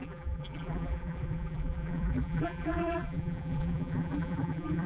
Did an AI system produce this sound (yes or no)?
yes